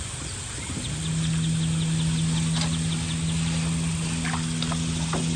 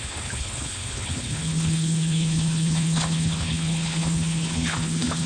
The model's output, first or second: second